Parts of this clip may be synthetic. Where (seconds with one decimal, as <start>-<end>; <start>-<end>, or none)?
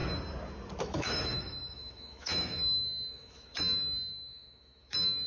0.8-5.3